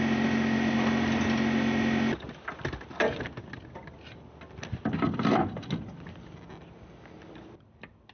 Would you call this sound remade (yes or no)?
no